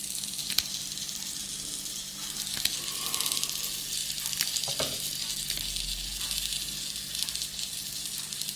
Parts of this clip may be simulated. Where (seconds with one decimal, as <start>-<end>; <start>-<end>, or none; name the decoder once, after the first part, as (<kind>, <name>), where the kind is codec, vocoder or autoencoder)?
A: none